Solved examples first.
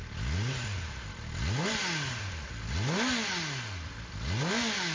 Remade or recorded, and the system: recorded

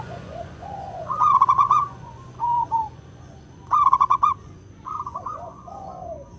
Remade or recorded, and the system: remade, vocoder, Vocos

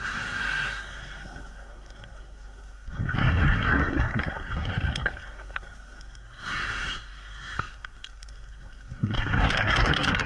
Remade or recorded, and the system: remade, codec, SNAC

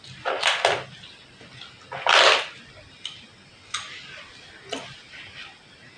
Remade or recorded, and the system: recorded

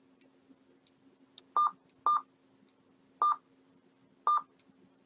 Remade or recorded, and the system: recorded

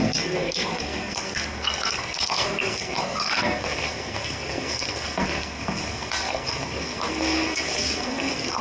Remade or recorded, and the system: remade, codec, SNAC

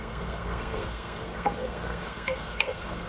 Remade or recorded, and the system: remade, codec, SNAC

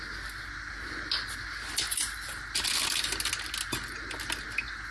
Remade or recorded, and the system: recorded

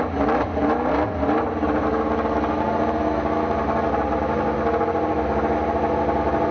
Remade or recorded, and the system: recorded